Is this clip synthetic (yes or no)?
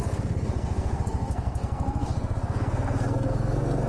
yes